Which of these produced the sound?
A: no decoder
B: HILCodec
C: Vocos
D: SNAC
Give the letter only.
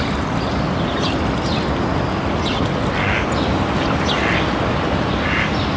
A